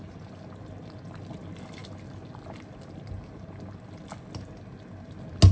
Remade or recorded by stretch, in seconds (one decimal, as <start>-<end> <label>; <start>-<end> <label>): 0.0-5.5 recorded